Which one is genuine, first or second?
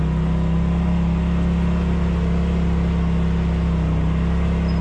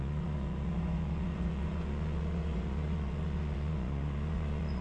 first